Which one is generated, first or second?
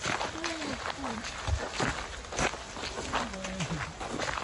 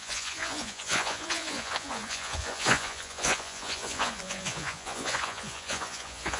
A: second